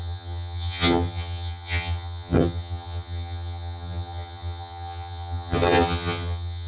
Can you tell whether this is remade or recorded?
remade